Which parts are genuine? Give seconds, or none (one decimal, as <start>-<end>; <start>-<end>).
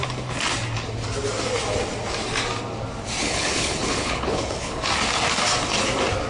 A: 0.0-3.2; 4.9-6.3